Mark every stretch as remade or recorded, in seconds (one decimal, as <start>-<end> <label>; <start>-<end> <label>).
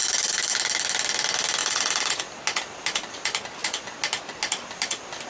0.0-0.5 remade; 0.5-1.6 recorded; 1.6-2.2 remade; 2.2-5.3 recorded